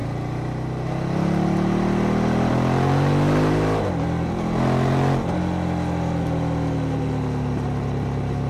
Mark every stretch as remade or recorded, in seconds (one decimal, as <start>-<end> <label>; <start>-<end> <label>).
0.0-8.5 recorded